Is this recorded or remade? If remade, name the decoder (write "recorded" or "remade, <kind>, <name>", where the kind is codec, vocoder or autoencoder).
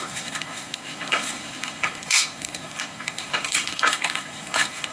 remade, codec, SNAC